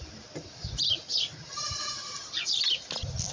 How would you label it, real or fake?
real